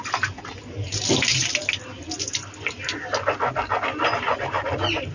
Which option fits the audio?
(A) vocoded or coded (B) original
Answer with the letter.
B